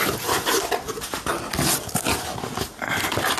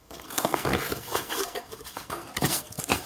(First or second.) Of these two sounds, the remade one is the second